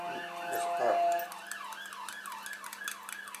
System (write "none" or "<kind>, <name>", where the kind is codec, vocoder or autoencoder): none